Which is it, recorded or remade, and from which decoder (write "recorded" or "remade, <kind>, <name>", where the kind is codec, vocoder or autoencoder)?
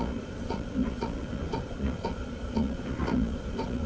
remade, vocoder, Vocos